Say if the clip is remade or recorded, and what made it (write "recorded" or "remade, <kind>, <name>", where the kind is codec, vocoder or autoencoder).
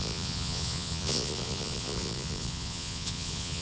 remade, vocoder, Vocos